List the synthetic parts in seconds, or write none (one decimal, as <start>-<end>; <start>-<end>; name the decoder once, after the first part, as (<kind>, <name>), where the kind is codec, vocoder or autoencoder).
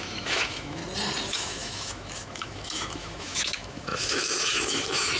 0.0-0.8 (autoencoder, DAC-VAE); 1.3-5.2